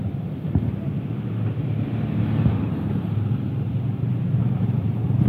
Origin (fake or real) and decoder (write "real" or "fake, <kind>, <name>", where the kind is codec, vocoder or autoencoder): fake, vocoder, BigVGAN v2